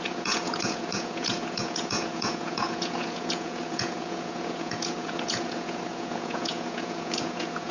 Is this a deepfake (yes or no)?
yes